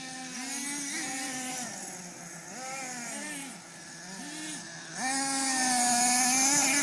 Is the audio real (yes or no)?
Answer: yes